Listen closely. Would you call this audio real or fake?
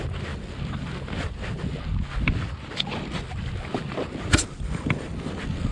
real